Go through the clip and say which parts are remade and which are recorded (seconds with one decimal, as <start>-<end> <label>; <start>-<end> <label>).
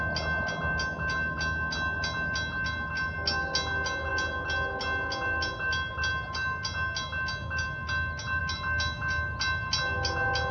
0.0-10.5 recorded